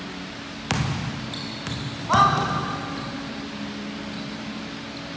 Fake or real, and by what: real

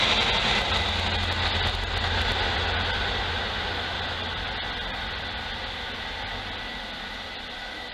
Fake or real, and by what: real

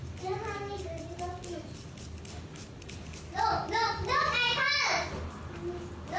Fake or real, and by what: real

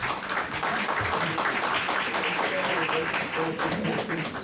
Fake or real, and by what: real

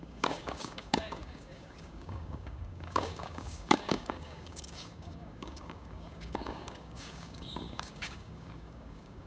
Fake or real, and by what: fake, codec, DAC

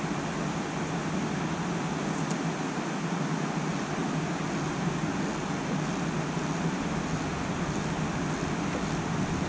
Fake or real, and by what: real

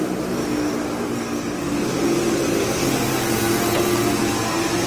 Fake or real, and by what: real